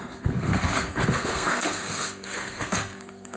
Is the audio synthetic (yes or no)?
yes